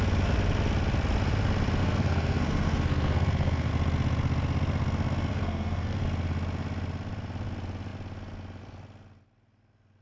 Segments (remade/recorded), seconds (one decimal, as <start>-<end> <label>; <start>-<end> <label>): 0.0-1.8 recorded; 1.8-3.7 remade; 3.7-5.3 recorded; 5.3-6.0 remade; 6.0-10.0 recorded